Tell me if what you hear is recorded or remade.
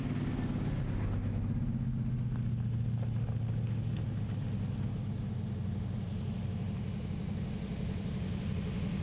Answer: recorded